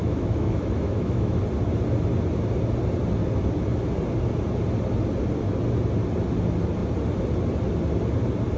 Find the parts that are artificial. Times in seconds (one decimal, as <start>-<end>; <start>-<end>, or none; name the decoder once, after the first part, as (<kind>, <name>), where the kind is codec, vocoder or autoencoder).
0.0-1.4 (autoencoder, DAC-VAE)